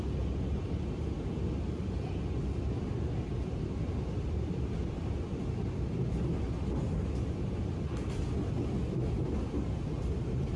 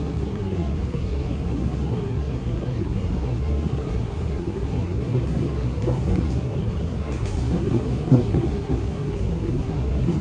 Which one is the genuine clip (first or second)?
first